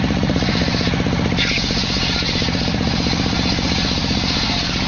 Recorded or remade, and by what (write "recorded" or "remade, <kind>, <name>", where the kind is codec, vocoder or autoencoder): remade, vocoder, Vocos